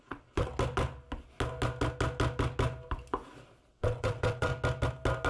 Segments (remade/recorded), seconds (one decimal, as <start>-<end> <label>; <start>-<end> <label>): 0.0-0.5 remade; 0.5-3.7 recorded; 3.7-4.5 remade; 4.5-5.3 recorded